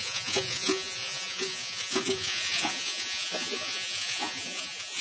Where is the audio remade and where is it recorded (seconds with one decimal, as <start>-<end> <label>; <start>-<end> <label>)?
0.0-5.0 remade